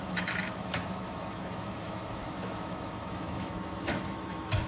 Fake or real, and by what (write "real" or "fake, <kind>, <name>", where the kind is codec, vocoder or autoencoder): fake, autoencoder, DAC-VAE